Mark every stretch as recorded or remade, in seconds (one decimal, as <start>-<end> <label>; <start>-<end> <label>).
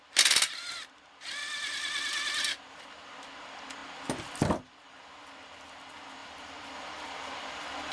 0.0-1.4 recorded; 1.4-2.8 remade; 2.8-6.2 recorded; 6.2-7.5 remade; 7.5-7.9 recorded